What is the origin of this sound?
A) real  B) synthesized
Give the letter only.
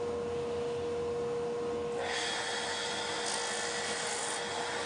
A